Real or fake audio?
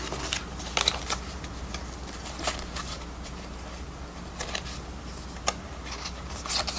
real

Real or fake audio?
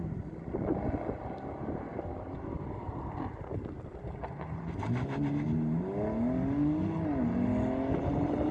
real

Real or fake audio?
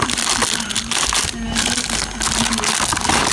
real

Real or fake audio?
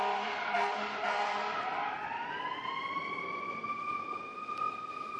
fake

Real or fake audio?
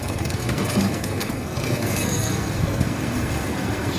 fake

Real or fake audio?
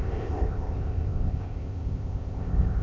fake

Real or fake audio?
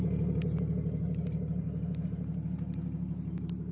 real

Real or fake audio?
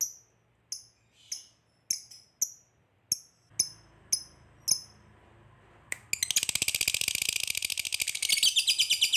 real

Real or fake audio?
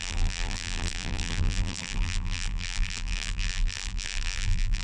fake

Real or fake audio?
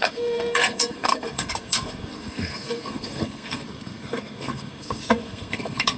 fake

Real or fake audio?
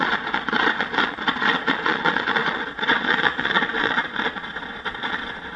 fake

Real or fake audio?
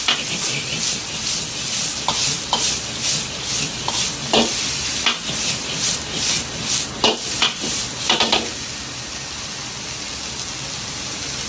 real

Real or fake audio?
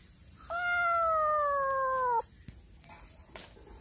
real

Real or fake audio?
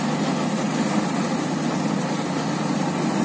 real